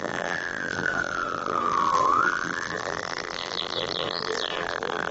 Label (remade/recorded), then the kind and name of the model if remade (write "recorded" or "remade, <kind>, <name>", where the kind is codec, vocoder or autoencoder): remade, vocoder, BigVGAN v2